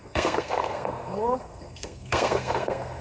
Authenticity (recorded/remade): remade